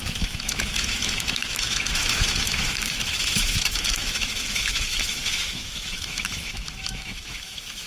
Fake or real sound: fake